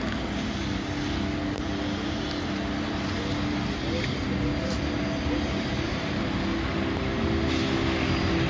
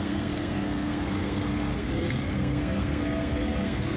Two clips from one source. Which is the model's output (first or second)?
second